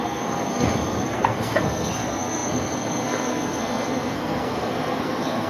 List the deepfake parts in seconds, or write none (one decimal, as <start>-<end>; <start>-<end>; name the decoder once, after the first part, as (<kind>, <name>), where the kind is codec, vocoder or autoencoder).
0.0-5.5 (codec, SNAC)